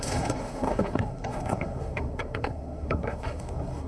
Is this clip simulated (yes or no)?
yes